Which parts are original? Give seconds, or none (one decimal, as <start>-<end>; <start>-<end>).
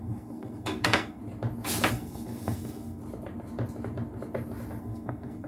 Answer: 1.2-1.9; 3.0-4.8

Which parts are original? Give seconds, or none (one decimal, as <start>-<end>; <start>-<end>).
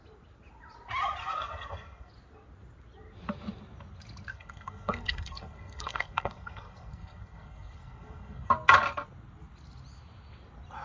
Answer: 0.0-1.2; 2.1-4.3; 8.5-10.8